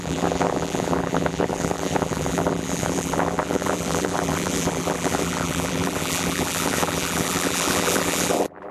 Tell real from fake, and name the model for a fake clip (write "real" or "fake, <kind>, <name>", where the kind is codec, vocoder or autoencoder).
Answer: fake, vocoder, BigVGAN v2